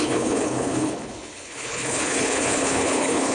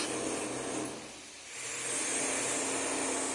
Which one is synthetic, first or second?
first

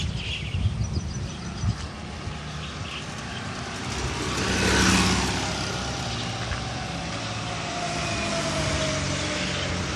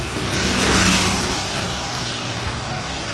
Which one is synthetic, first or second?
second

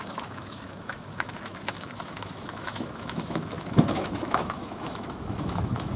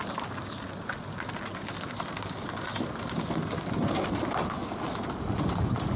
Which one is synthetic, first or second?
first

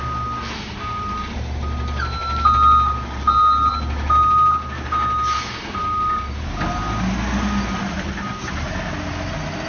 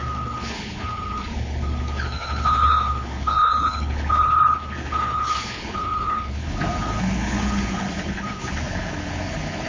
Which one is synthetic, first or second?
second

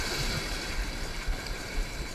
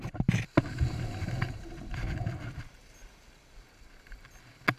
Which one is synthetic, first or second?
first